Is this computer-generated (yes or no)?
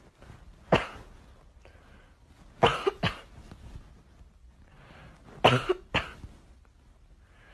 no